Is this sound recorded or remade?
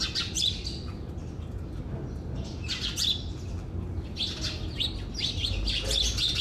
recorded